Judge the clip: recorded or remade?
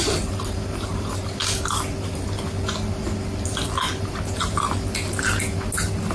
recorded